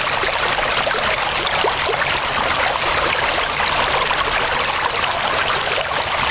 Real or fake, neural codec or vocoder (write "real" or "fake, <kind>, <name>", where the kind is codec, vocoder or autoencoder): real